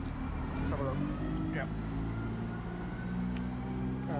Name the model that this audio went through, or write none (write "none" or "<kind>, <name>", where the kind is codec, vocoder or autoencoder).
none